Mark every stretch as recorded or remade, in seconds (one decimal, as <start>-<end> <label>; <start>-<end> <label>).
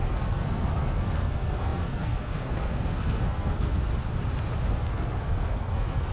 0.0-3.9 remade; 3.9-4.7 recorded; 4.7-6.1 remade